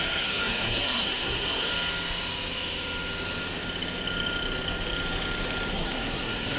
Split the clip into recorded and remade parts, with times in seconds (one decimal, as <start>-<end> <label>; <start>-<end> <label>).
0.0-1.7 remade; 1.7-5.7 recorded; 5.7-6.6 remade